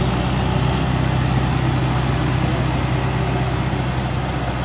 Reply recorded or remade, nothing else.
recorded